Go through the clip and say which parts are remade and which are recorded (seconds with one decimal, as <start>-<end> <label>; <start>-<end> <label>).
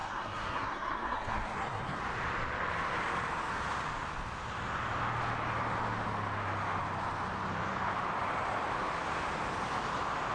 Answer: 0.0-2.0 remade; 2.0-10.3 recorded